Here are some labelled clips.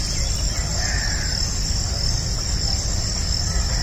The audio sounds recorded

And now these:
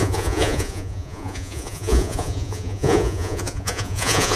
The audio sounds remade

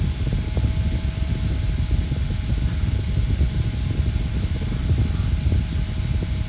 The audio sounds recorded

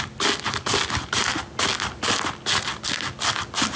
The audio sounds recorded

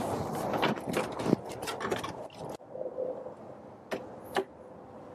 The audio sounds recorded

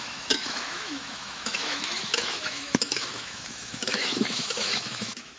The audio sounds remade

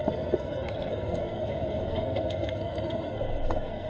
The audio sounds remade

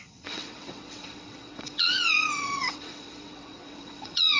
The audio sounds remade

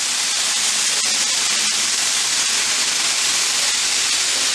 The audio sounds recorded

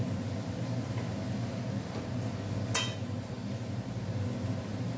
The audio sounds recorded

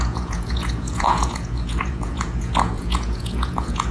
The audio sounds remade